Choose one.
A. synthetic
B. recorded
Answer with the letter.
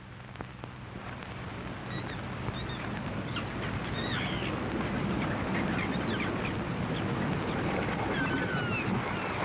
B